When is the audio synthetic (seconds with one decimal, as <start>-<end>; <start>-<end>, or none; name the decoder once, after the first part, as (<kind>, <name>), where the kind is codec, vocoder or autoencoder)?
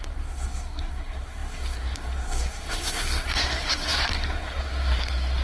0.0-5.4 (codec, SNAC)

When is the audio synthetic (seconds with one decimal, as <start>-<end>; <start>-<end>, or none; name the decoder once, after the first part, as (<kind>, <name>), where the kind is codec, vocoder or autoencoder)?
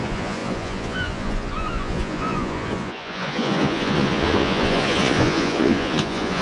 0.0-6.4 (vocoder, Vocos)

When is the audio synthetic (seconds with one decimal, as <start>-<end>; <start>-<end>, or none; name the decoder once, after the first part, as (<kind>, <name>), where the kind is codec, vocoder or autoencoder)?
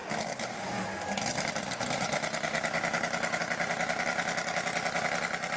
none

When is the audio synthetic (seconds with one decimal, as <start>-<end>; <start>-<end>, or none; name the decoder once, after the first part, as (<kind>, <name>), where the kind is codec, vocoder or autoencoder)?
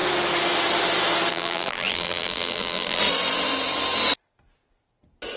1.3-3.0 (vocoder, BigVGAN v2)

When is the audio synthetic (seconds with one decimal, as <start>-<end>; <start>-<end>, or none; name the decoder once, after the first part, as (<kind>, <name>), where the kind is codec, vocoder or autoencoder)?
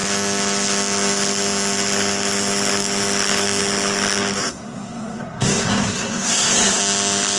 4.4-6.8 (codec, SNAC)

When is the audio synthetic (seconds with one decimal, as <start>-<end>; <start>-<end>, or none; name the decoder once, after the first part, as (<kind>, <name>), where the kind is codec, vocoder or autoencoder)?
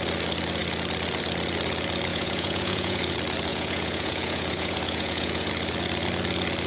2.1-3.0 (vocoder, Vocos); 3.5-5.5